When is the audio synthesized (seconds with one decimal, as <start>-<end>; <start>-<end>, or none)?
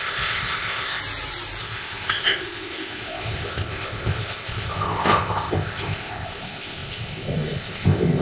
0.0-1.0; 1.6-8.2